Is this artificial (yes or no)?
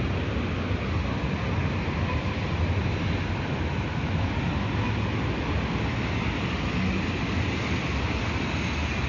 no